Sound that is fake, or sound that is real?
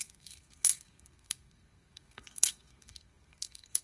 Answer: fake